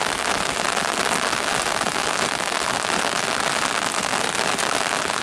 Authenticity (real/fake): real